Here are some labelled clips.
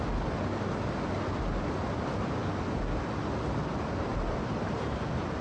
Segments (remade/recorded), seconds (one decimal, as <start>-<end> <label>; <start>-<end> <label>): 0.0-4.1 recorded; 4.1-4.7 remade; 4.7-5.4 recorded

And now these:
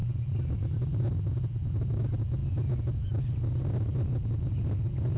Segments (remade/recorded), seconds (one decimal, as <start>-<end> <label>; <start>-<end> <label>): 0.0-5.2 recorded

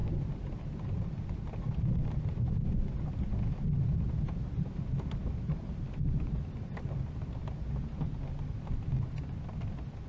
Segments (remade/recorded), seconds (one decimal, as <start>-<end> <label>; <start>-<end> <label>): 0.0-1.5 remade; 1.5-10.1 recorded